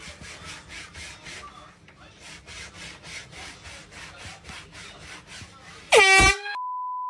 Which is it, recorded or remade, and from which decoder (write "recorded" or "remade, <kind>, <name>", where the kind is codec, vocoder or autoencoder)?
recorded